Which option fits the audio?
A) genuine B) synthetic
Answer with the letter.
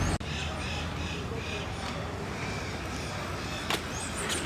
A